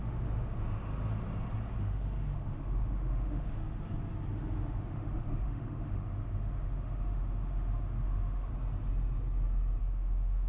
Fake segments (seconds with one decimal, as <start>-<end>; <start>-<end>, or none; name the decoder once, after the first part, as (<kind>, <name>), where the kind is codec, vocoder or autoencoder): 0.0-0.9 (autoencoder, DAC-VAE); 1.8-3.6; 4.3-8.5; 9.8-10.5